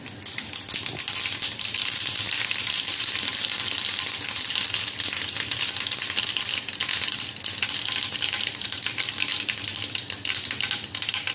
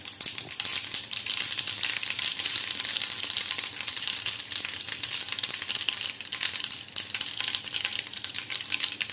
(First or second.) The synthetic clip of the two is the second